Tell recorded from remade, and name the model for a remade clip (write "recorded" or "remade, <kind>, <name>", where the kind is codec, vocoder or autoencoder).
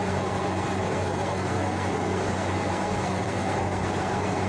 remade, codec, SNAC